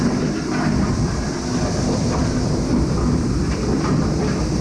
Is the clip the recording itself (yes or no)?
no